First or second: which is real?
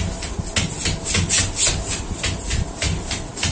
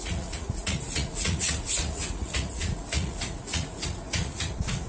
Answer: first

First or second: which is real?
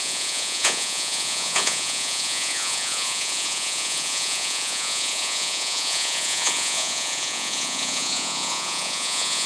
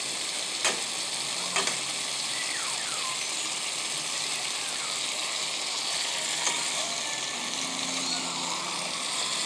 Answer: second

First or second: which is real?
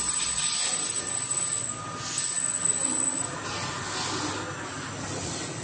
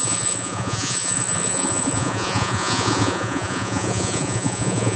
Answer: first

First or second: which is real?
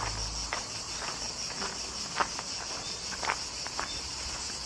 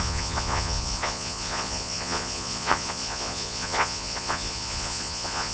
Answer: first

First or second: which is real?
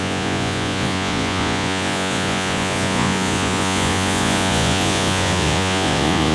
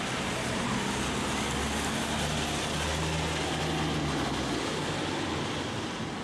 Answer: second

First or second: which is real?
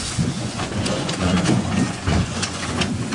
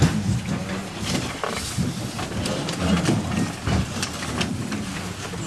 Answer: second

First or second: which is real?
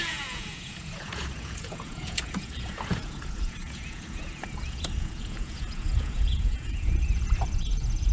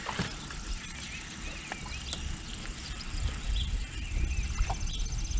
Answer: second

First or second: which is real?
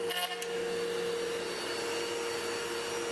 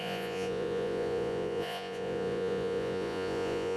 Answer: first